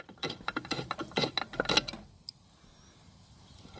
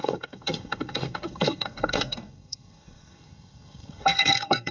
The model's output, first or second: second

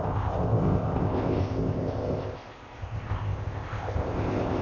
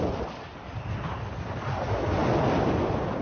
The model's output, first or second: first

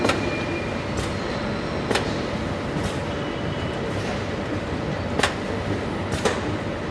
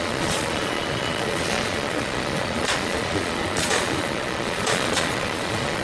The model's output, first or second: second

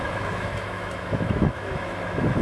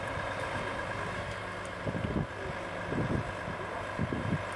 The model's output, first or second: first